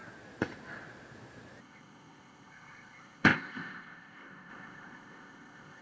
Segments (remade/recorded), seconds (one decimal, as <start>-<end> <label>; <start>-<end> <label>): 0.0-1.6 recorded; 1.6-5.8 remade